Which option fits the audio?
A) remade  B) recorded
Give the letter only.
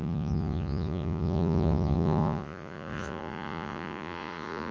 A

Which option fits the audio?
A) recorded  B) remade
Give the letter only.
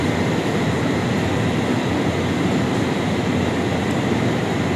A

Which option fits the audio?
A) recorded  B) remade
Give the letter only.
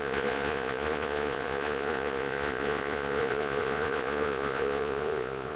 B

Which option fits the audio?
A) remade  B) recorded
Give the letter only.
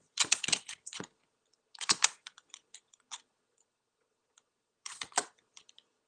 A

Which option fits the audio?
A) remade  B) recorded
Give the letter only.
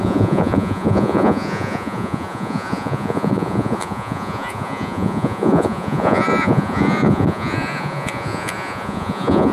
A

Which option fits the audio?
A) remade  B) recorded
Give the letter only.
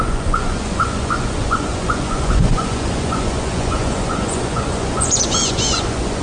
A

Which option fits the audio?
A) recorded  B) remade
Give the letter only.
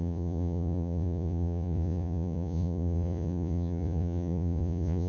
B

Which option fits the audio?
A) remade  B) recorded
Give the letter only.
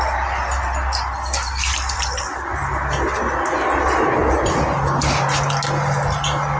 B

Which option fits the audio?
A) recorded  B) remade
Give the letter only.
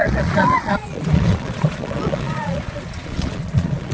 B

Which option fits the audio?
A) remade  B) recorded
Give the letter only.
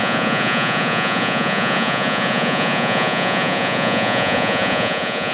A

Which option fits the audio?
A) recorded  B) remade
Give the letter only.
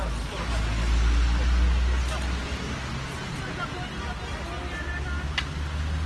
A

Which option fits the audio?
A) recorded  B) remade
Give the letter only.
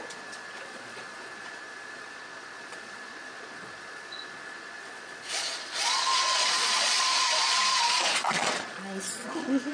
B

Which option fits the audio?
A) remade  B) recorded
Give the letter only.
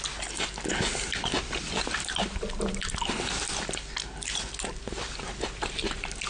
B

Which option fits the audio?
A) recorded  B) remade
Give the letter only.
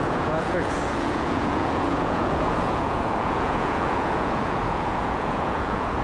B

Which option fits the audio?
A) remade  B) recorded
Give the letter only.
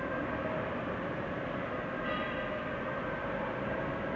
B